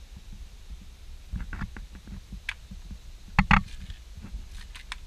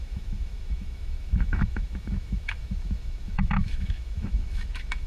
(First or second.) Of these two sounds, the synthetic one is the second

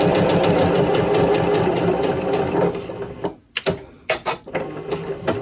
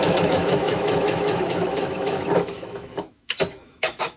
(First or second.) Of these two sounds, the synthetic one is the second